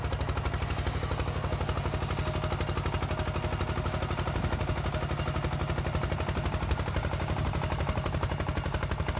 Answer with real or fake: real